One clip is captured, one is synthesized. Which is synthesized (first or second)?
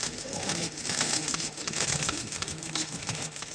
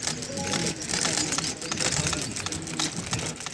first